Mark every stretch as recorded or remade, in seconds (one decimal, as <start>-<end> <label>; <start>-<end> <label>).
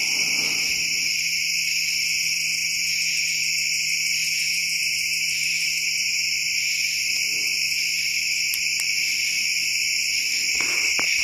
0.0-2.6 recorded; 2.6-3.2 remade; 3.2-4.2 recorded; 4.2-4.8 remade; 4.8-11.2 recorded